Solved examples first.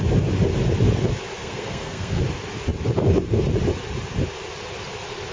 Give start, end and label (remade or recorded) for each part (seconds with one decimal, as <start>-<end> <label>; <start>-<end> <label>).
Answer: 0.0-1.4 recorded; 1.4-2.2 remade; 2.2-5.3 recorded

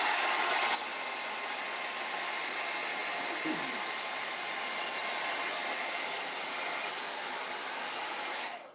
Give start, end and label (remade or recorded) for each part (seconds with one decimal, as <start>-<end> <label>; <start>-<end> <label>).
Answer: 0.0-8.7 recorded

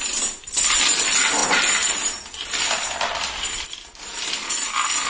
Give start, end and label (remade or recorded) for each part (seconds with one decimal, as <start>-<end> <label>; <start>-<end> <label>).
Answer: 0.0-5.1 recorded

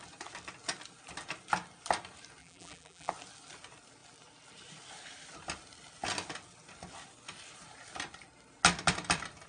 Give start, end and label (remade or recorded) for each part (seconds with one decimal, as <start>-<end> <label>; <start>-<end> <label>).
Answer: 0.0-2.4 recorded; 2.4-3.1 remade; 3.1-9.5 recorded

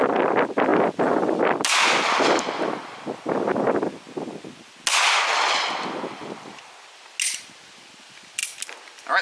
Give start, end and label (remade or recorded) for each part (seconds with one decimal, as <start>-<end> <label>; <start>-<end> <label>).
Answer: 0.0-9.2 recorded

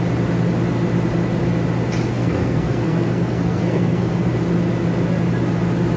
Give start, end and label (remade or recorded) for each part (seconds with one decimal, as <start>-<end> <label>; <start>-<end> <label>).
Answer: 0.0-2.1 recorded; 2.1-4.3 remade; 4.3-6.0 recorded